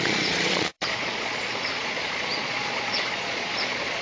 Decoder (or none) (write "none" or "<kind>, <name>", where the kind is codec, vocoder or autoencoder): vocoder, Vocos